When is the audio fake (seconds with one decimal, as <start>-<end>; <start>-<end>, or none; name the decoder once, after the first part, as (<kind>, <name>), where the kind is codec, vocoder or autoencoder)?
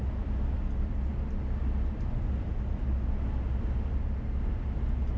none